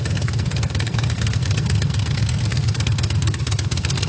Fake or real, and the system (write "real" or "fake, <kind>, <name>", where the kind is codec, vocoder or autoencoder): fake, codec, SNAC